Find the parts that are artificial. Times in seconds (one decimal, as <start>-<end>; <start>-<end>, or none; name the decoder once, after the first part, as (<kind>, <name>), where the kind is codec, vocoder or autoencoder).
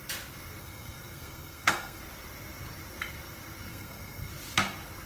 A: 0.6-2.0 (codec, SNAC); 3.7-4.3